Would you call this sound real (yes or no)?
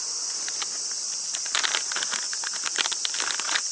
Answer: yes